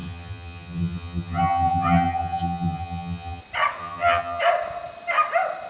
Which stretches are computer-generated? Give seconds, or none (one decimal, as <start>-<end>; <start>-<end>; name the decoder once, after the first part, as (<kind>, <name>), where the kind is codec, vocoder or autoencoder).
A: 0.0-3.4 (vocoder, HiFi-GAN); 3.8-4.4